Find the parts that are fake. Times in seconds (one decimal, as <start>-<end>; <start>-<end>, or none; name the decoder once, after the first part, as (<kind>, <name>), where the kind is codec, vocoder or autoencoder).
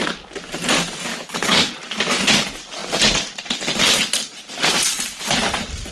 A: 1.1-1.7 (codec, HILCodec)